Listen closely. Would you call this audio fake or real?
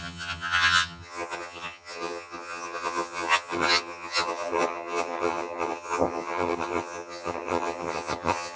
fake